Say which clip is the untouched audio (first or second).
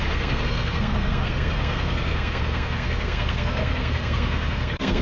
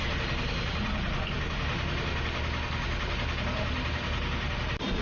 second